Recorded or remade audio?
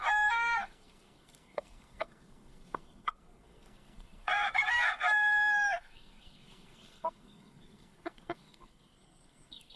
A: remade